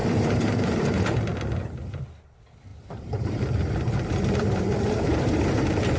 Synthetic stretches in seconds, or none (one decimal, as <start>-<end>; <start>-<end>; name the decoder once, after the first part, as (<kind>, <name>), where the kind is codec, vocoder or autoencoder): 0.0-1.1 (vocoder, BigVGAN v2); 2.7-3.4